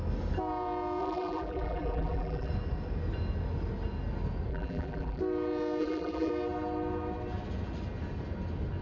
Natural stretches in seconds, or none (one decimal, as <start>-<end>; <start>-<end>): 0.0-1.0; 2.5-4.5; 5.2-5.8; 6.3-8.8